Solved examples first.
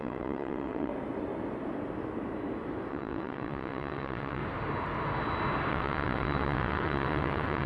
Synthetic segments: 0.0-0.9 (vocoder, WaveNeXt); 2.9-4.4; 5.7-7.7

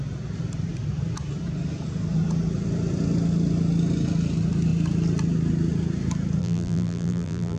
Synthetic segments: 6.4-7.6 (vocoder, BigVGAN v2)

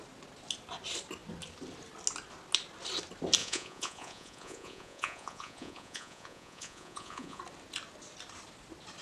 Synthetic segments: 3.4-7.4 (vocoder, Vocos)

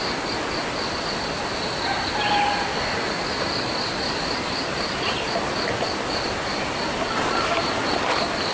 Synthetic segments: none

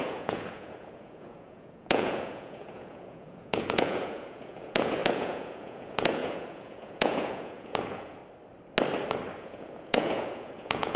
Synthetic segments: 0.0-8.2 (vocoder, Vocos); 9.4-11.0

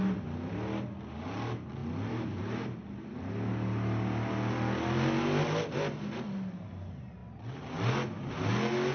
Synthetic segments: none

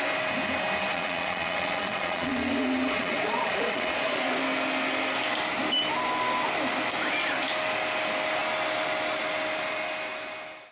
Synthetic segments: 0.9-4.4 (vocoder, Vocos)

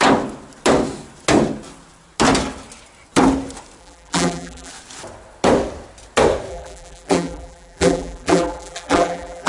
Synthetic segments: 3.8-4.7 (vocoder, BigVGAN v2); 6.5-9.5